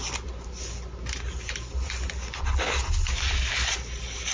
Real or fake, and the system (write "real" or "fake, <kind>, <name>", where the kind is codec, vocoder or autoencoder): real